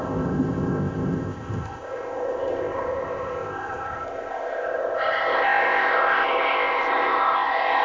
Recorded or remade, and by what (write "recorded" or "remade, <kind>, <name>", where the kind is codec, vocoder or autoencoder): remade, codec, ZipCodec